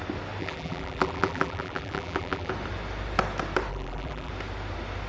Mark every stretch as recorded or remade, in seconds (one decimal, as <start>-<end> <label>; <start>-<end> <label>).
0.0-0.4 recorded; 0.4-2.5 remade; 2.5-3.7 recorded; 3.7-4.3 remade; 4.3-5.1 recorded

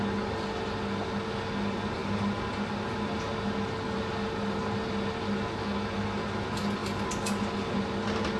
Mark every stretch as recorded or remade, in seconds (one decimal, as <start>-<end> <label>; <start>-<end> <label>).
0.0-8.4 recorded

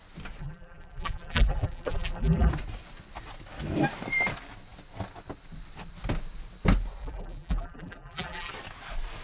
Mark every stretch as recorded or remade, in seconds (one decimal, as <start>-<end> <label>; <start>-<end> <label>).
0.0-0.4 recorded; 0.4-2.5 remade; 2.5-7.0 recorded; 7.0-8.5 remade; 8.5-9.2 recorded

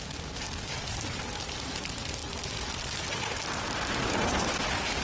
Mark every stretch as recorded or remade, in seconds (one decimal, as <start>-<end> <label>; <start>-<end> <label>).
0.0-2.2 remade; 2.2-4.5 recorded; 4.5-5.0 remade